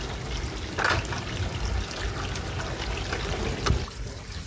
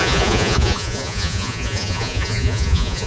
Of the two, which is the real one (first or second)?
first